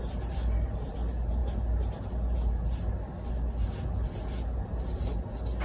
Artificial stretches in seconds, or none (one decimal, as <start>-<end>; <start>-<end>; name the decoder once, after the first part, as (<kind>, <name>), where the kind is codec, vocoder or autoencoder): none